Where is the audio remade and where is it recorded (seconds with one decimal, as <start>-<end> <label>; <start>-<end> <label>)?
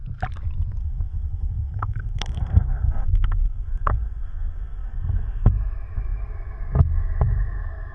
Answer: 0.0-0.8 recorded; 0.8-5.5 remade; 5.5-7.9 recorded